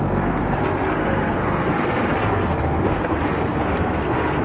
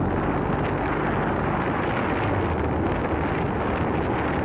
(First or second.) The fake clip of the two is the first